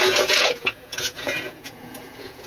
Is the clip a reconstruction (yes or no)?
yes